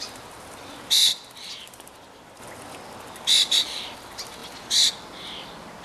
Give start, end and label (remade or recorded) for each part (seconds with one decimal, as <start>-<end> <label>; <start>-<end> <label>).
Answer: 0.0-5.8 recorded